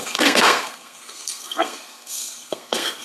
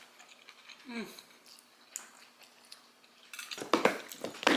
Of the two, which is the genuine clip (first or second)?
second